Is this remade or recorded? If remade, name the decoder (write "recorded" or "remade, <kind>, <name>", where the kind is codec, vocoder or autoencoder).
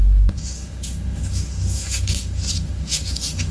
remade, autoencoder, DAC-VAE